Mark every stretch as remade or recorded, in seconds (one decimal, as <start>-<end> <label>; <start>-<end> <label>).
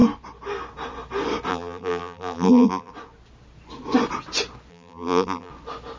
0.0-1.5 recorded; 1.5-2.9 remade; 2.9-4.7 recorded; 4.7-5.5 remade; 5.5-6.0 recorded